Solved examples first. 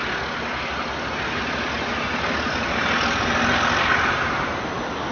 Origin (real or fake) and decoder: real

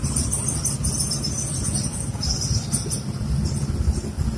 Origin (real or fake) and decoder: real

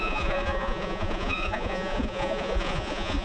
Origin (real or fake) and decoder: fake, vocoder, Vocos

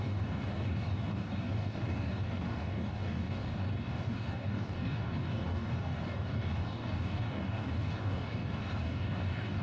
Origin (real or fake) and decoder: fake, codec, DAC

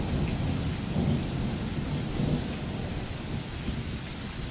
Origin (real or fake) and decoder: real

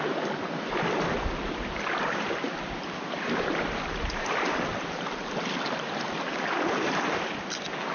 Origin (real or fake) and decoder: real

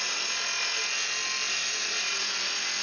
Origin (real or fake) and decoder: real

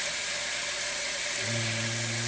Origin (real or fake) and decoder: real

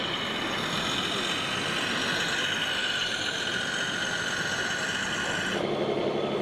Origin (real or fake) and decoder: real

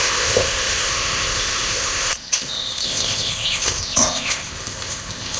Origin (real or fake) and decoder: fake, codec, ZipCodec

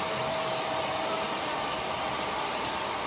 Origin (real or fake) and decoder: real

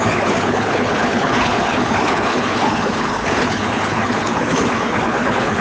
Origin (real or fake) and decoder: fake, codec, HILCodec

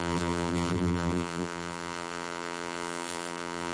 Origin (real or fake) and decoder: fake, vocoder, BigVGAN v2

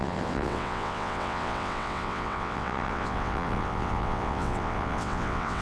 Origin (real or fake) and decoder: fake, vocoder, WaveNeXt